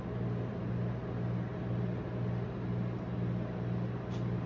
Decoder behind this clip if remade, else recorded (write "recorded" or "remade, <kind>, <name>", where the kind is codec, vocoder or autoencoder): recorded